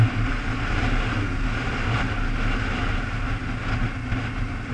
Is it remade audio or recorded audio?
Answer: recorded